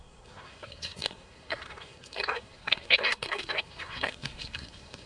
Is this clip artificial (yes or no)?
yes